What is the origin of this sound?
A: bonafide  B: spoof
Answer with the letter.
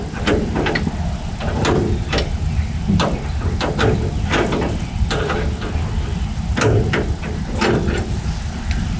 A